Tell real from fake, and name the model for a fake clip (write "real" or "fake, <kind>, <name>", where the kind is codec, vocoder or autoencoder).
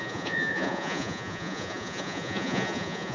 fake, vocoder, Vocos